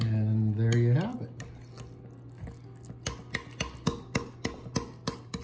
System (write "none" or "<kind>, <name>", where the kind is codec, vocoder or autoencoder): none